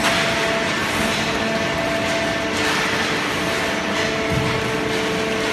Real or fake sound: real